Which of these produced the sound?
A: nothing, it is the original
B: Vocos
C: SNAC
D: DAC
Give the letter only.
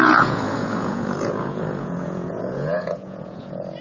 B